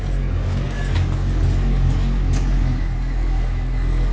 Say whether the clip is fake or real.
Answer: fake